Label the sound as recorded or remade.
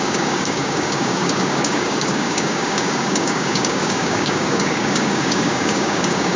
remade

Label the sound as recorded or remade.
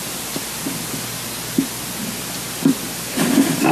recorded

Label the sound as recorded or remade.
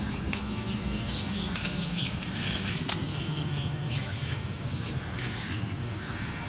remade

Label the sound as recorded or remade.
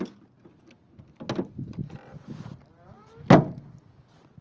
recorded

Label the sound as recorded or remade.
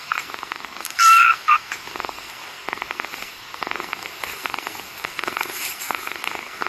remade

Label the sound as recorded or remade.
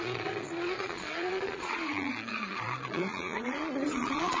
remade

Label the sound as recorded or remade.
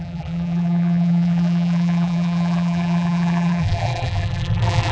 remade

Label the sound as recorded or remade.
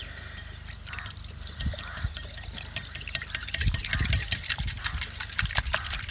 recorded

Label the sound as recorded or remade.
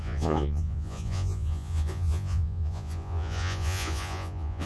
remade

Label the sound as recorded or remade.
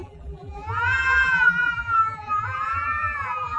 remade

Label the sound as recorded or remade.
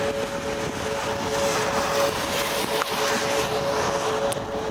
recorded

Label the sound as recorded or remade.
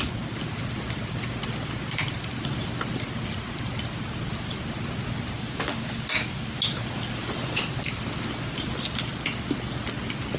recorded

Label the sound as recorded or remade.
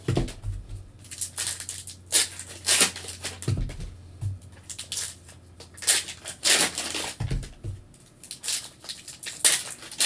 recorded